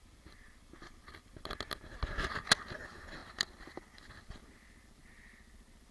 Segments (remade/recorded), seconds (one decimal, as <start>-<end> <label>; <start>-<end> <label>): 0.0-5.9 recorded